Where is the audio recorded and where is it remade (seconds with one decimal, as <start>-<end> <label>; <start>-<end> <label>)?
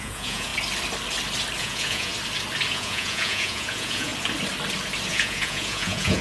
0.0-0.5 remade; 0.5-1.6 recorded; 1.6-2.1 remade; 2.1-2.7 recorded; 2.7-4.1 remade; 4.1-5.1 recorded; 5.1-6.2 remade